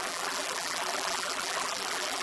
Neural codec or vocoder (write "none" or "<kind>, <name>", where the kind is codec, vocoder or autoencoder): vocoder, BigVGAN v2